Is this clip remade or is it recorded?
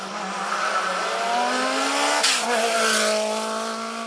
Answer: recorded